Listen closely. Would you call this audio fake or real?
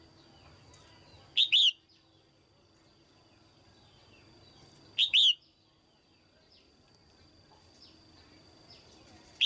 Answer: real